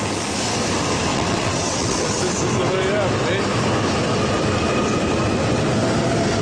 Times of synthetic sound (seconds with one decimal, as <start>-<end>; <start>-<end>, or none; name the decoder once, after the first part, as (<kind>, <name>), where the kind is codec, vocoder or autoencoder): 1.1-2.2 (vocoder, WaveNeXt)